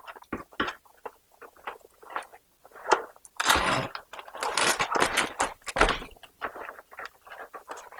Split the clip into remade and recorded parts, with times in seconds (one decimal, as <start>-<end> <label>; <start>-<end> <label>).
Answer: 0.0-8.0 recorded